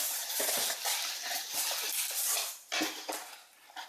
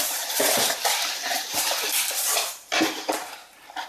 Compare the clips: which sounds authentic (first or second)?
first